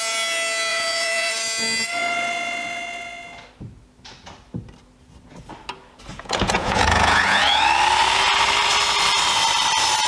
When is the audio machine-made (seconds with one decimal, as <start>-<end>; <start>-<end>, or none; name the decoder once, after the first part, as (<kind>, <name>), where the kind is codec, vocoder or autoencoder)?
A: 0.7-1.3 (vocoder, Vocos); 6.1-7.6